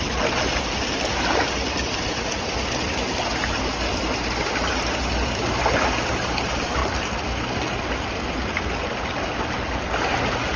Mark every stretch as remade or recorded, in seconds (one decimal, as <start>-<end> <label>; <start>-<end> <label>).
0.0-10.6 recorded